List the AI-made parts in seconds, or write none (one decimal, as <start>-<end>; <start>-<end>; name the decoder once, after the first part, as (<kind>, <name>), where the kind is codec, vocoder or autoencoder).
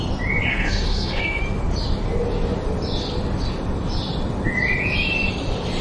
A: 0.5-1.6 (codec, SNAC)